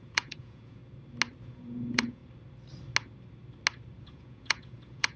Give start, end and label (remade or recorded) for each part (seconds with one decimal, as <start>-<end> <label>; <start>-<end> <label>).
0.0-0.8 remade; 0.8-1.4 recorded; 1.4-2.2 remade; 2.2-4.0 recorded; 4.0-5.2 remade